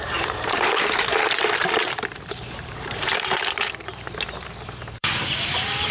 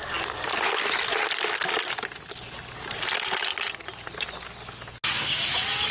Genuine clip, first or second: second